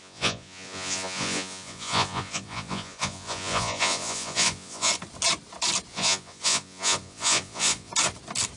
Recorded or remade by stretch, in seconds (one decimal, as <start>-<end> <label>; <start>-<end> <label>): 0.0-4.9 remade; 4.9-5.9 recorded; 5.9-7.9 remade; 7.9-8.6 recorded